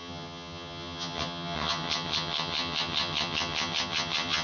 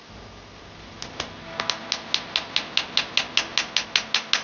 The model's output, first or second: first